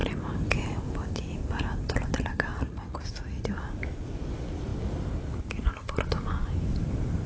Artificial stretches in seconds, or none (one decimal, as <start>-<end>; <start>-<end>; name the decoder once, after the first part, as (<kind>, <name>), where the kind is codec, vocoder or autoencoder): 2.5-3.4 (vocoder, Vocos)